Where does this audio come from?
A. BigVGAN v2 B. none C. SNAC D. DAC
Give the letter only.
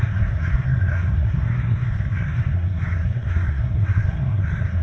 C